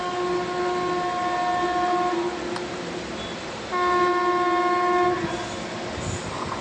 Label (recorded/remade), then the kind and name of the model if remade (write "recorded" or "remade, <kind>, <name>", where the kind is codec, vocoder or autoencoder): recorded